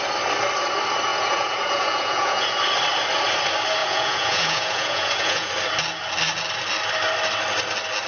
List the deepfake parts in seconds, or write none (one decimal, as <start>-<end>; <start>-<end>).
1.1-2.6; 3.8-5.5